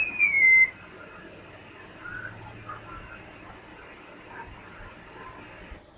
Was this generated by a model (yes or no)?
no